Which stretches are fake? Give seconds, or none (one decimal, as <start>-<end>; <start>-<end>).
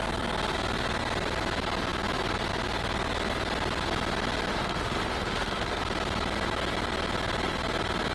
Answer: 4.5-5.8